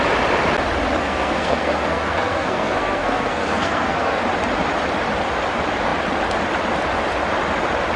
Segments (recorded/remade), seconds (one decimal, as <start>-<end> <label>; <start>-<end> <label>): 0.0-1.0 recorded; 1.0-4.2 remade; 4.2-8.0 recorded